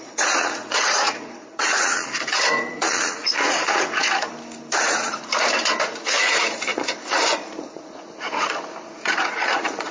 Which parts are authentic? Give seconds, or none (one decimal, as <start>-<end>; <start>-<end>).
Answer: 4.3-4.8; 5.3-6.0